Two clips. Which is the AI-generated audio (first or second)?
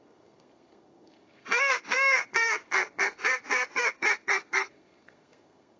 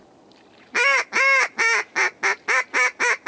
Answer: first